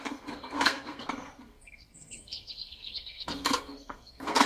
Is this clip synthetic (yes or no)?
yes